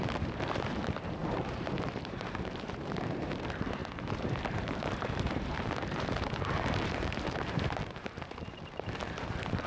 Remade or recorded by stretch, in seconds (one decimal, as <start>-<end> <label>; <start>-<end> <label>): 0.0-9.7 remade